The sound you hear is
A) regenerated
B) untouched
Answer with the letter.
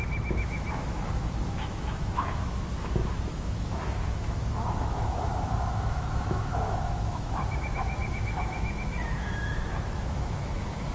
A